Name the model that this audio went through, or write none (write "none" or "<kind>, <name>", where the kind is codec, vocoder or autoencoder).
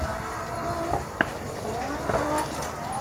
none